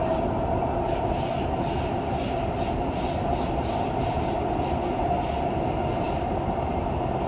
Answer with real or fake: real